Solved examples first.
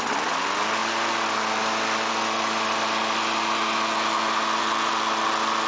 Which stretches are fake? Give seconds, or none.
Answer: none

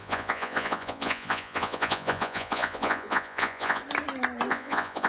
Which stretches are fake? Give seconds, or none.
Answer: 0.0-3.8; 4.5-5.1

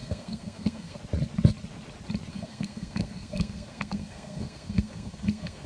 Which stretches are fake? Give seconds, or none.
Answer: 0.0-1.0; 2.3-5.7

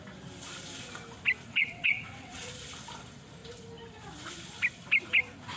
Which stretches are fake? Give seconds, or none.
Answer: 1.5-2.5

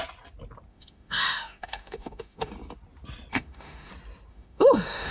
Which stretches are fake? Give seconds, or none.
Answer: 0.7-2.5; 3.3-3.9; 4.3-5.1

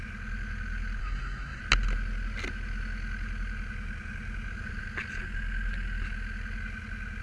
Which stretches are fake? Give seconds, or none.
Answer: 1.0-1.6

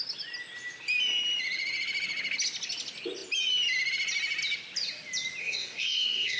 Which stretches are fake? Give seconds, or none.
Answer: 5.4-6.4

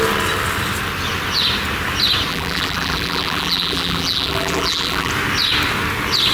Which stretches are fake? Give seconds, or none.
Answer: 2.3-5.1